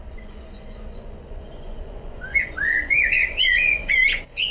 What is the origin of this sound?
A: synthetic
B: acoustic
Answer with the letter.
A